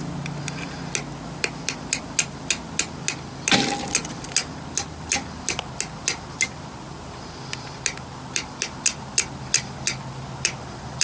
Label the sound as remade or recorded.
recorded